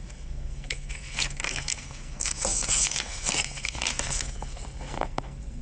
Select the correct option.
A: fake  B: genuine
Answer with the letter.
A